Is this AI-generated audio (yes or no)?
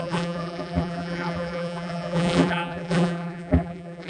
yes